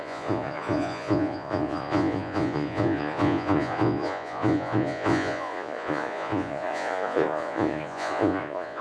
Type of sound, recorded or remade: remade